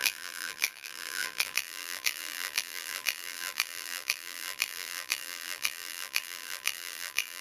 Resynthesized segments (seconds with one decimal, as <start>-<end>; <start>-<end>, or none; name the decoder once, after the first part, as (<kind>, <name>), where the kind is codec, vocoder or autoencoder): 0.0-7.4 (vocoder, BigVGAN v2)